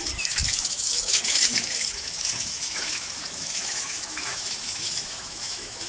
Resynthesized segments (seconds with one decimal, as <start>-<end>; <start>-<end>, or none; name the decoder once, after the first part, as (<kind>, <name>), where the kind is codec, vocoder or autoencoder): 0.0-5.9 (autoencoder, DAC-VAE)